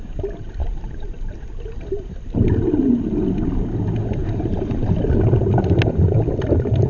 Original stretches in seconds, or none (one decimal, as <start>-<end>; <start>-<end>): 0.0-0.6; 2.5-4.2; 5.0-6.9